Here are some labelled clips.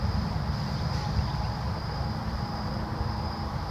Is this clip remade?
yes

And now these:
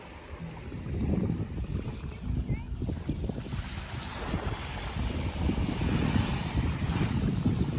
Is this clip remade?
no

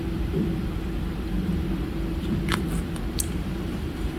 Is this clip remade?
yes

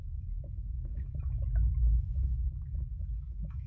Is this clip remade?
yes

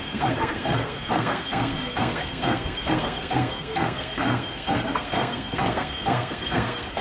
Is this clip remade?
yes